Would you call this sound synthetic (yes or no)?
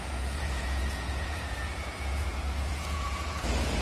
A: yes